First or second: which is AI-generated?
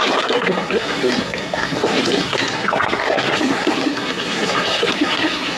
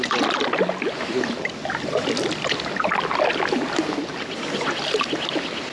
first